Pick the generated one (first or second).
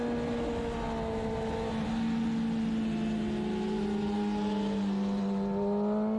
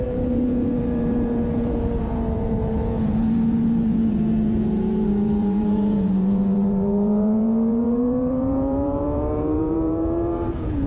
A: second